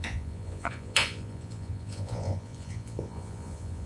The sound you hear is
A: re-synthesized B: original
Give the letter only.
A